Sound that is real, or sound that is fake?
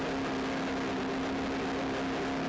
real